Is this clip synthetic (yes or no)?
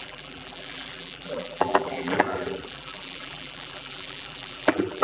yes